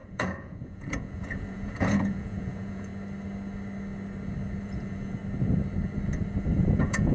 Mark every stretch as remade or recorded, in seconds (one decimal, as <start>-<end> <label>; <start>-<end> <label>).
0.0-2.9 remade; 2.9-4.6 recorded; 4.6-5.2 remade; 5.2-6.4 recorded; 6.4-7.1 remade